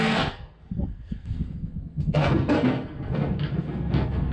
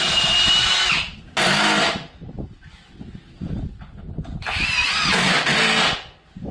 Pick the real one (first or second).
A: second